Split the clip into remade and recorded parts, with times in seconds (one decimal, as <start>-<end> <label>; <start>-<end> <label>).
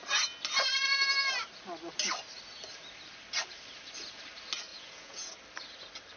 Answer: 0.0-4.7 recorded; 4.7-5.3 remade; 5.3-6.2 recorded